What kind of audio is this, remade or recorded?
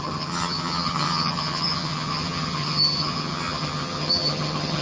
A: remade